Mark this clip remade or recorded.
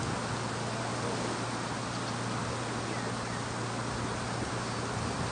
recorded